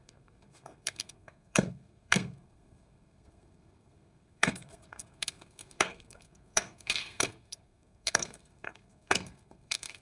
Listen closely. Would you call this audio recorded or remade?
remade